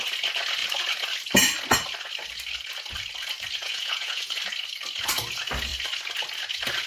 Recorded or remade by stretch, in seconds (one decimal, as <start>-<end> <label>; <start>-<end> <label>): 0.0-3.6 recorded; 3.6-4.4 remade; 4.4-6.9 recorded